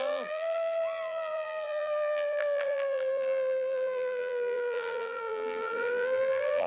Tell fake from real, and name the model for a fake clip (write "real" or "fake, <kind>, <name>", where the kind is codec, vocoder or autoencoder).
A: fake, vocoder, BigVGAN v2